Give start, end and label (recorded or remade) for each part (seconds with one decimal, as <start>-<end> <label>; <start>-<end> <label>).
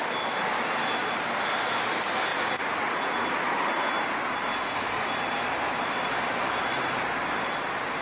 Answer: 0.0-2.3 recorded; 2.3-3.3 remade; 3.3-8.0 recorded